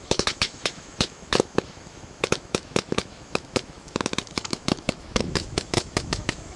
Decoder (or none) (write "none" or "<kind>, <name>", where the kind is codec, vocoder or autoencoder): autoencoder, DAC-VAE